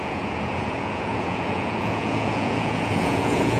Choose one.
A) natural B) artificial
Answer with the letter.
B